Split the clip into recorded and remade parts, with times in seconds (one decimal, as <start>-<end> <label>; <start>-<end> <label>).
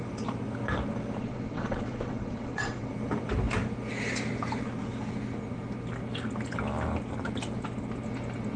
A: 0.0-1.2 recorded; 1.2-2.9 remade; 2.9-8.6 recorded